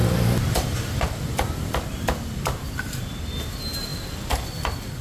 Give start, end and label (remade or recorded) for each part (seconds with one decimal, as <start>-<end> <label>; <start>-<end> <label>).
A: 0.0-3.0 remade; 3.0-3.9 recorded; 3.9-5.0 remade